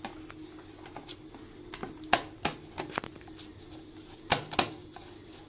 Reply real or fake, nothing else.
real